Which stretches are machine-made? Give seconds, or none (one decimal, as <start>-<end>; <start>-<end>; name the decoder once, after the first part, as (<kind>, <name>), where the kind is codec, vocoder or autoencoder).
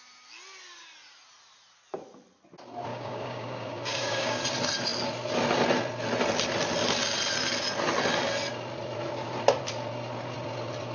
2.9-4.4 (codec, DAC)